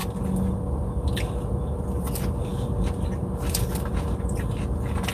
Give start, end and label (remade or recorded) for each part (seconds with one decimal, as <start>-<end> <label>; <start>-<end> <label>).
0.0-5.1 recorded